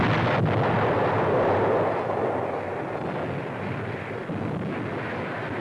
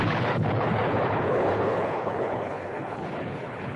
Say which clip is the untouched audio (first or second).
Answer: first